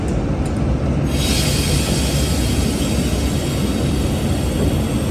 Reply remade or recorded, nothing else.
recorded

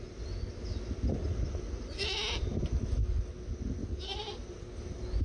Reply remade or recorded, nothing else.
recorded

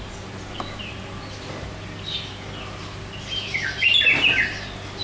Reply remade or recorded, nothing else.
recorded